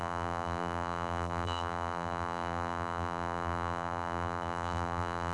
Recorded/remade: remade